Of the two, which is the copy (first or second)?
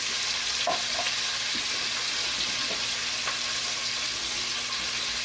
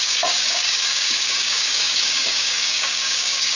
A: second